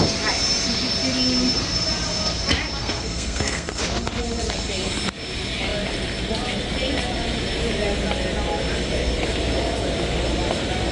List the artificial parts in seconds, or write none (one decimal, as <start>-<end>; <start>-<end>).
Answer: 2.8-3.8